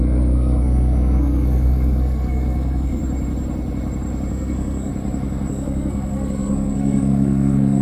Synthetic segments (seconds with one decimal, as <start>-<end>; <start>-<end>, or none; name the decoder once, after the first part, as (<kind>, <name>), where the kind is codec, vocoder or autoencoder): 0.0-3.0 (codec, SNAC); 4.3-4.9; 5.5-7.8